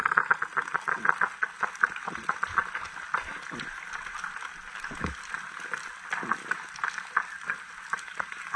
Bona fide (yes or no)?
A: yes